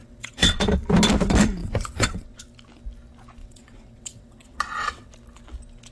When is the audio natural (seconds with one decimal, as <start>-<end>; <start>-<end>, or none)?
0.6-1.6; 2.4-3.4; 5.1-5.9